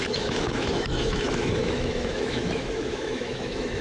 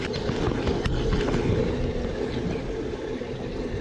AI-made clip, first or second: first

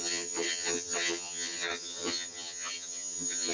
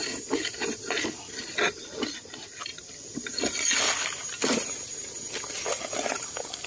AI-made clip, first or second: first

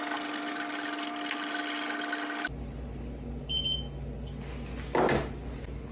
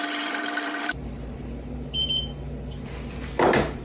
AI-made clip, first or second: second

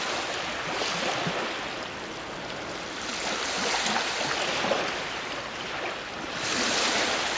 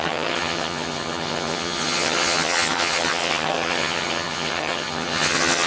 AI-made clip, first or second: second